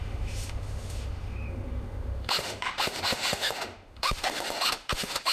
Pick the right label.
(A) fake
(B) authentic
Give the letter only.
A